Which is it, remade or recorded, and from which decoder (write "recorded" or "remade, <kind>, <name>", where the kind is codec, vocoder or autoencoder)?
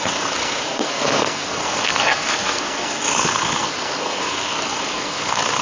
remade, codec, SNAC